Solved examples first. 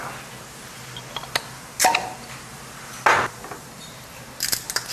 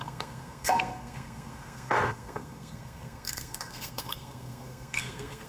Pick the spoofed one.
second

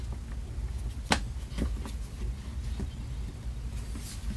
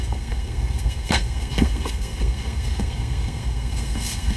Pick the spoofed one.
second